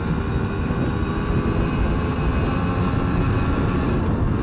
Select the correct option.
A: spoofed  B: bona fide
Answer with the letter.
B